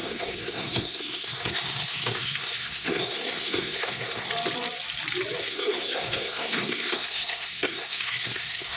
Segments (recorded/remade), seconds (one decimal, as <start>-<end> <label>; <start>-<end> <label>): 0.0-4.3 remade; 4.3-5.4 recorded; 5.4-8.8 remade